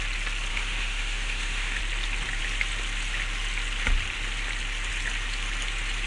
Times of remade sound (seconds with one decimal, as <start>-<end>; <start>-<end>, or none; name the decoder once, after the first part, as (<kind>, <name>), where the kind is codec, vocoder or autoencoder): 0.5-1.8 (autoencoder, DAC-VAE)